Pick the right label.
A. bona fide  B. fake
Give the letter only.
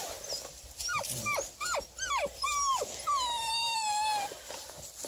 A